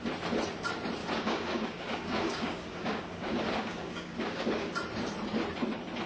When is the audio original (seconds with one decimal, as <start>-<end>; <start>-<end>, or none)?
0.0-1.0; 4.7-6.1